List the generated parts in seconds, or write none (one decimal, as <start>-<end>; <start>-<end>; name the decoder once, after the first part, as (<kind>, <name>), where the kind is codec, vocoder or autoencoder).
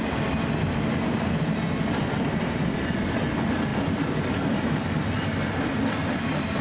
none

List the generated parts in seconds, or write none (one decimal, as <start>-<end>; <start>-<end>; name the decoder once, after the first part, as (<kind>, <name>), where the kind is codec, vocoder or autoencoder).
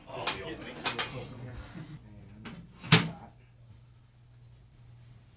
none